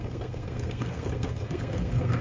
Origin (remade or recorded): remade